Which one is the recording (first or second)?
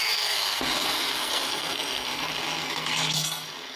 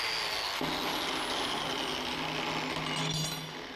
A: second